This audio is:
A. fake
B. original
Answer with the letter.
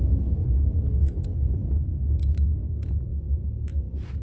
B